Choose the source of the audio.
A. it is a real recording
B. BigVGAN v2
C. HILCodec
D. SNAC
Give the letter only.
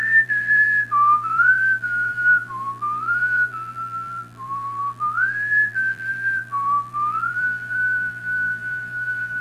B